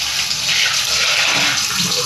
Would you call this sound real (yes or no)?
yes